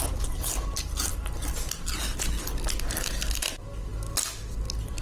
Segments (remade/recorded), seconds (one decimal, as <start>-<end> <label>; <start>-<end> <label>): 0.0-5.0 recorded